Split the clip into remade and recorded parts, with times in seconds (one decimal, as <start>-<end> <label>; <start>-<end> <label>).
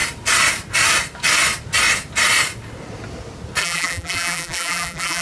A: 0.0-3.6 recorded; 3.6-5.2 remade